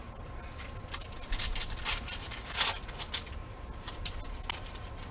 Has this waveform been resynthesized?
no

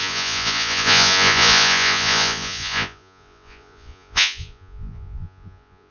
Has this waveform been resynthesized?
yes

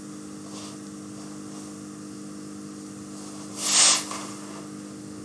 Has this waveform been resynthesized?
no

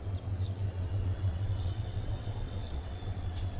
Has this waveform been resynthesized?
yes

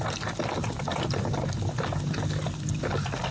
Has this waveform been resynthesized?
no